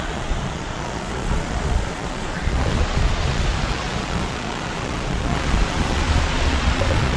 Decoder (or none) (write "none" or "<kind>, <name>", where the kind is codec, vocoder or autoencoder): vocoder, Vocos